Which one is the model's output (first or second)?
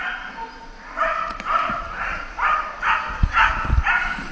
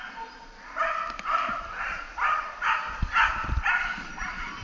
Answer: second